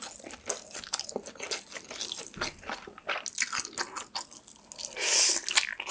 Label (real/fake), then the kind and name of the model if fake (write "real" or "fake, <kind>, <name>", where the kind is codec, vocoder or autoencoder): real